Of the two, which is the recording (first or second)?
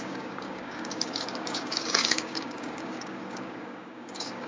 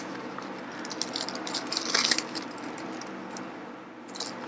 second